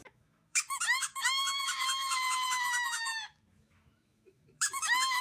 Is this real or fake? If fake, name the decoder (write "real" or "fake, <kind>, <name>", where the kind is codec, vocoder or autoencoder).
fake, autoencoder, DAC-VAE